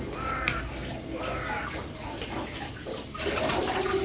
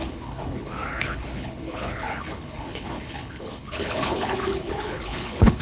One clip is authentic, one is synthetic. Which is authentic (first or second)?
first